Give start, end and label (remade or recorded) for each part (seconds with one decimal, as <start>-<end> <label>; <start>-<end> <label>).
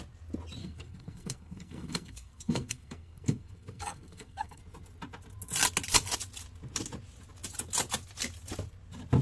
0.0-0.6 recorded; 0.6-4.6 remade; 4.6-9.2 recorded